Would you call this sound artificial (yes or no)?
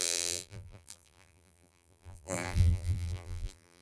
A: yes